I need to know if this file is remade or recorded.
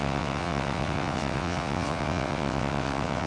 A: remade